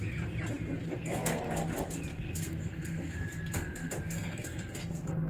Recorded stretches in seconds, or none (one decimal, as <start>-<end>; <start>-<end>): 0.0-0.9; 1.4-2.1